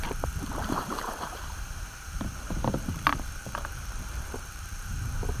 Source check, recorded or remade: remade